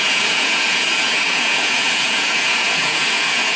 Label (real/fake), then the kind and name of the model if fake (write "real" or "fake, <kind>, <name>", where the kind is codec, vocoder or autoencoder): fake, vocoder, Vocos